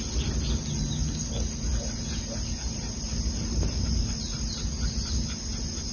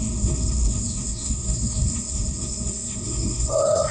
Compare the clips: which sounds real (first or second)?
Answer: first